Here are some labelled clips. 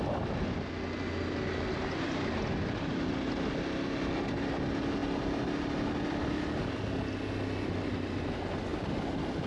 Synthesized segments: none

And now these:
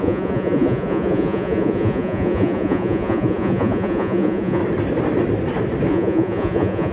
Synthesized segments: 0.0-4.6 (vocoder, Vocos); 5.9-6.9

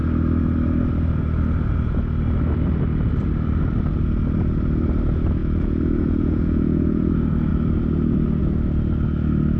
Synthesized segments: 5.4-7.1 (vocoder, Vocos)

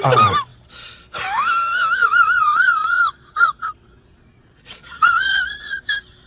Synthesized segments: 2.0-5.8 (vocoder, Vocos)

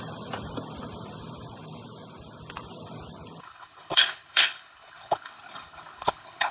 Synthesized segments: 3.4-6.5 (codec, HILCodec)

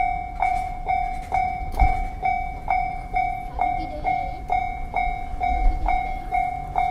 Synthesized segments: 0.5-4.6 (vocoder, BigVGAN v2); 5.3-6.5

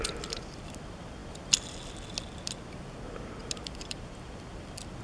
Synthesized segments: none

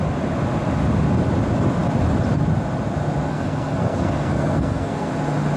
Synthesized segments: 3.3-5.1 (codec, SNAC)